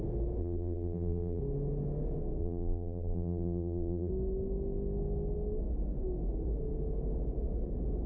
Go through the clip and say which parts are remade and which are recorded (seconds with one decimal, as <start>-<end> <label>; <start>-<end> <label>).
0.0-0.4 recorded; 0.4-1.4 remade; 1.4-2.4 recorded; 2.4-4.1 remade; 4.1-8.1 recorded